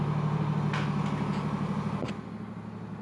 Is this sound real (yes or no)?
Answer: yes